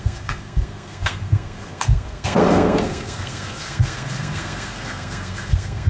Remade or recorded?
remade